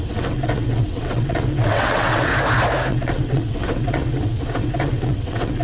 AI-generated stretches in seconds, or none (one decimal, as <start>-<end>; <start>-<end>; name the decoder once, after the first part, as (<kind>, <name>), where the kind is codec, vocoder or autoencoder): 0.0-2.3 (vocoder, WaveNeXt); 2.9-5.6

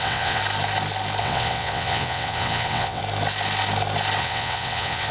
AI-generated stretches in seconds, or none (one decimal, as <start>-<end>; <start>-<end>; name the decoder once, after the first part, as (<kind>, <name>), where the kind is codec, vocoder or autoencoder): 0.0-0.4 (vocoder, WaveNeXt); 1.2-3.0; 4.2-5.1